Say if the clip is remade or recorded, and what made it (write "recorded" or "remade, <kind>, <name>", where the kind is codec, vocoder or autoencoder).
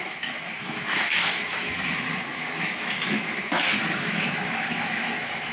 remade, autoencoder, DAC-VAE